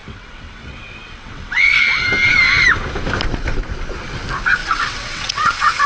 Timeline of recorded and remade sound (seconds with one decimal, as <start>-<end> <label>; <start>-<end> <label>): 0.0-1.8 remade; 1.8-4.6 recorded; 4.6-5.9 remade